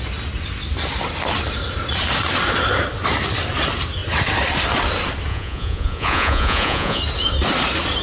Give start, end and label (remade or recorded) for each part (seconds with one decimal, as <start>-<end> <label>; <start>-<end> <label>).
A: 0.0-5.3 recorded; 5.3-7.0 remade; 7.0-8.0 recorded